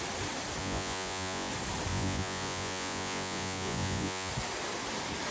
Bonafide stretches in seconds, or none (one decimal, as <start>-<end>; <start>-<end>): 0.0-0.6; 1.5-1.9; 4.3-5.3